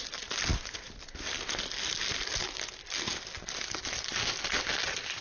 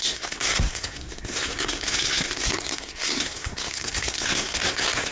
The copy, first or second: second